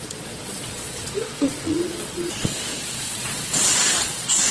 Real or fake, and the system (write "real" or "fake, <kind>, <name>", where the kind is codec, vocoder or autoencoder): fake, vocoder, Vocos